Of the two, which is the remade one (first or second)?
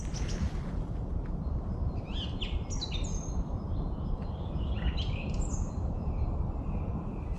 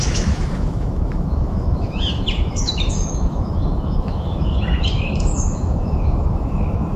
second